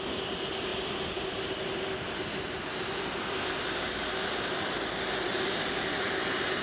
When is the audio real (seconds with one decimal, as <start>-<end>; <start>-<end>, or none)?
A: 0.0-6.6